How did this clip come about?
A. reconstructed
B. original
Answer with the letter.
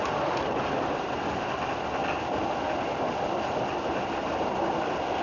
B